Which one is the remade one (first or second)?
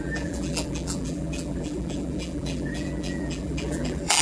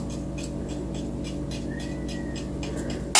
first